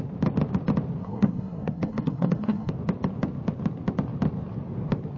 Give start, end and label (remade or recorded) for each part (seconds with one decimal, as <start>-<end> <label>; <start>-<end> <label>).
0.0-1.0 recorded; 1.0-2.7 remade; 2.7-5.2 recorded